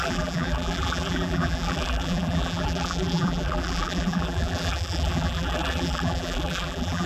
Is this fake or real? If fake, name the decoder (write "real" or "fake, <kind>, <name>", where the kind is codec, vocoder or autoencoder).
fake, vocoder, BigVGAN v2